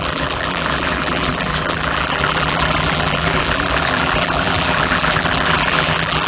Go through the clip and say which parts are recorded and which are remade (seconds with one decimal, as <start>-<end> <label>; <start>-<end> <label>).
0.0-6.3 remade